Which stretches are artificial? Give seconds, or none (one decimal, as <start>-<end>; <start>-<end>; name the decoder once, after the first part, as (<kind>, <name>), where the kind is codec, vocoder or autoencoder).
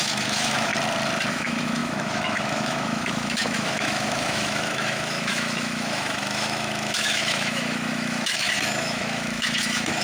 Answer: 0.0-0.7 (autoencoder, DAC-VAE); 1.3-10.0